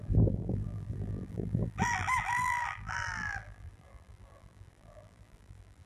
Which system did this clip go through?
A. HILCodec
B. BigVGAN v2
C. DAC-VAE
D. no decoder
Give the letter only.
B